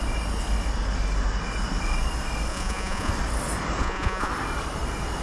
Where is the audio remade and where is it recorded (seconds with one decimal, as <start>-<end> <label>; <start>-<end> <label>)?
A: 0.0-2.5 recorded; 2.5-3.1 remade; 3.1-3.8 recorded; 3.8-4.3 remade; 4.3-5.2 recorded